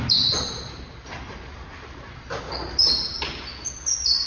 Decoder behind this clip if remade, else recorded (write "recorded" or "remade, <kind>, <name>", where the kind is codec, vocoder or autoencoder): recorded